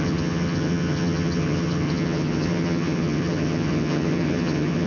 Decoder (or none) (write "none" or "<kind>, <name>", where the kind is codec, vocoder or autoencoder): vocoder, HiFi-GAN